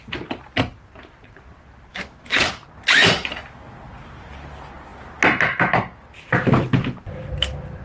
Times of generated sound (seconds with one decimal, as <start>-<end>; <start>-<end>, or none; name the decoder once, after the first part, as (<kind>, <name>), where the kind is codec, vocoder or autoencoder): 1.9-2.5 (autoencoder, DAC-VAE)